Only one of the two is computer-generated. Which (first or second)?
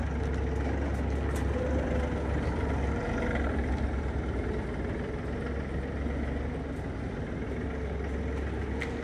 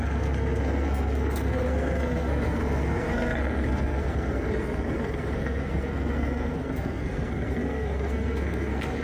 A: second